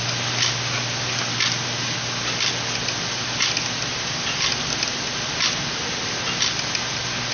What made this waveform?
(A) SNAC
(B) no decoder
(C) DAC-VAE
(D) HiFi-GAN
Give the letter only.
B